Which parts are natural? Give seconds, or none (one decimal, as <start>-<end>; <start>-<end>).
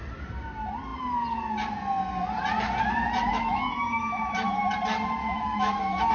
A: 0.0-3.3; 4.6-5.2